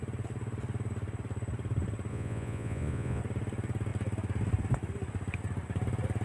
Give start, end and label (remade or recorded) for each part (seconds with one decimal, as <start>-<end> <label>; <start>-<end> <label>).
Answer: 0.0-2.1 recorded; 2.1-3.2 remade; 3.2-6.2 recorded